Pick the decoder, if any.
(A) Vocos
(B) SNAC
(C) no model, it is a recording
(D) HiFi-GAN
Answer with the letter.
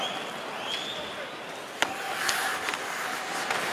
C